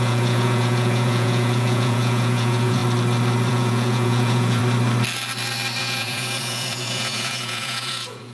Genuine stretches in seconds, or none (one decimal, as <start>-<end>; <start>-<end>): 2.8-3.5; 4.6-5.8